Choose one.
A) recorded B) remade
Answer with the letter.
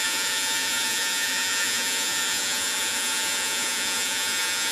B